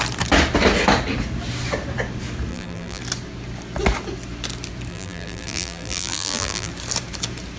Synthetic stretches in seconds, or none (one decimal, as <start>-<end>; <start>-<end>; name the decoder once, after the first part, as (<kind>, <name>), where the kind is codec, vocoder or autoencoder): 2.5-3.0 (vocoder, BigVGAN v2); 4.9-6.7